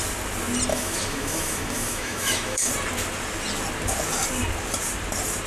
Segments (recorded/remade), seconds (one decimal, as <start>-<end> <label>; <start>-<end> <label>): 0.0-0.7 recorded; 0.7-2.7 remade; 2.7-5.5 recorded